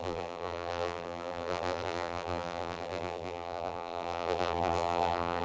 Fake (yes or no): yes